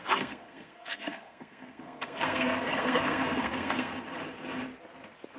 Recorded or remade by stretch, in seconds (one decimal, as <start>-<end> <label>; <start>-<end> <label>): 0.0-3.9 remade; 3.9-5.4 recorded